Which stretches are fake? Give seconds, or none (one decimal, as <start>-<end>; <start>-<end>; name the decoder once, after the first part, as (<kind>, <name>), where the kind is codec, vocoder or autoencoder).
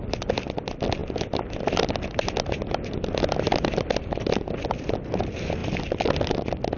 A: none